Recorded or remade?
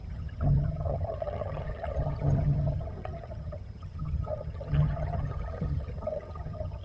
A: remade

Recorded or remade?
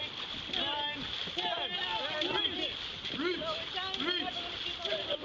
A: recorded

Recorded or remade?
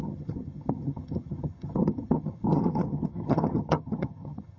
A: remade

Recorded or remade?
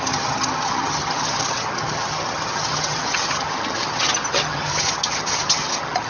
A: remade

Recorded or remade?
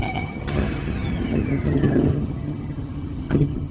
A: remade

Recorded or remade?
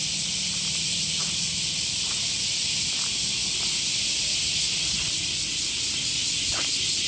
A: recorded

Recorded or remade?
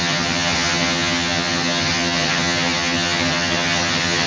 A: remade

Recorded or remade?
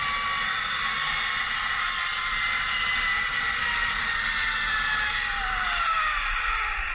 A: recorded